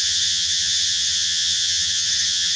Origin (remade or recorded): remade